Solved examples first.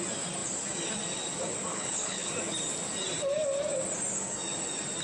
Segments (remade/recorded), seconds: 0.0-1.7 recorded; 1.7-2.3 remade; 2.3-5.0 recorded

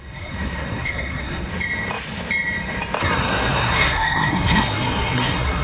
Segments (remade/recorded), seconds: 0.0-1.5 remade; 1.5-3.0 recorded; 3.0-5.6 remade

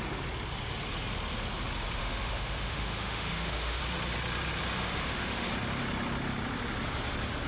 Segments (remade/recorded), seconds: 0.0-2.0 recorded; 2.0-3.8 remade; 3.8-4.8 recorded; 4.8-5.5 remade; 5.5-7.5 recorded

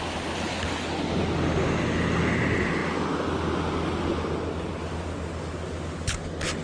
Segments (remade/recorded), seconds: 0.0-6.6 recorded

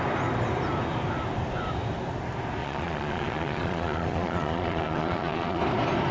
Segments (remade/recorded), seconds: 0.0-2.6 recorded; 2.6-5.6 remade; 5.6-6.1 recorded

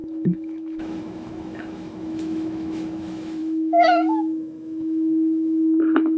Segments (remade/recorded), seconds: 0.0-6.2 remade

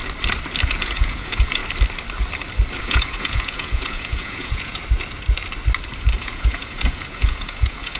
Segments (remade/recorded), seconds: 0.0-0.8 recorded; 0.8-1.6 remade; 1.6-2.8 recorded; 2.8-4.8 remade; 4.8-6.2 recorded; 6.2-8.0 remade

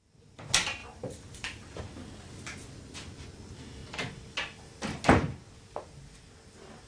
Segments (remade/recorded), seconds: 0.0-0.8 recorded; 0.8-1.8 remade; 1.8-6.9 recorded